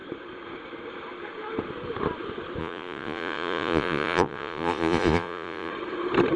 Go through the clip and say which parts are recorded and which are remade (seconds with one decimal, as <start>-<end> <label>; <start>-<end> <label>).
0.0-2.6 recorded; 2.6-5.7 remade; 5.7-6.4 recorded